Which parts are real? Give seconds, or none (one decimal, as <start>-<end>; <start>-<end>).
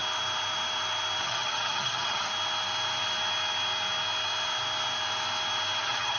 0.0-1.2; 2.3-5.8